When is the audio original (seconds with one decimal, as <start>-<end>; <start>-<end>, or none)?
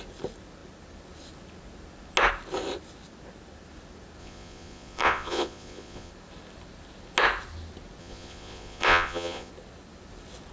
0.0-4.2; 6.1-8.0; 9.5-10.5